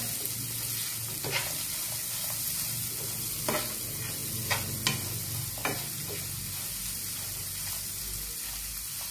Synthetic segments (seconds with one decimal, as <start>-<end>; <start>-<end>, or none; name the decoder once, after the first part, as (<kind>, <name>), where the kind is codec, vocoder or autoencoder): none